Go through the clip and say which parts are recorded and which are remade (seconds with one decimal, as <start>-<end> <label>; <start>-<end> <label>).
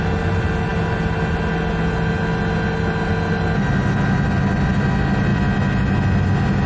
0.0-6.7 recorded